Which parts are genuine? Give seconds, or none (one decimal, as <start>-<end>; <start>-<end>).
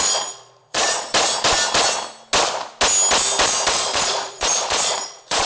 1.1-3.7